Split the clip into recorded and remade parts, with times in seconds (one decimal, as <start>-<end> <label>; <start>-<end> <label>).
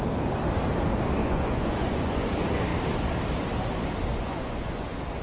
0.0-1.2 recorded; 1.2-2.3 remade; 2.3-4.1 recorded; 4.1-4.8 remade; 4.8-5.2 recorded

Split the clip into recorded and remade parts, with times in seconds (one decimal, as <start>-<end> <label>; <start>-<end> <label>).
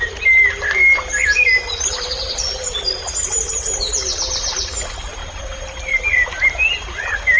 0.0-7.4 recorded